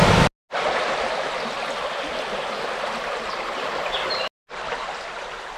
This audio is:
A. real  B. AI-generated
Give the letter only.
A